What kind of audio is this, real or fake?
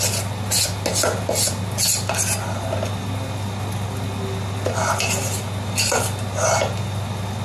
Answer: real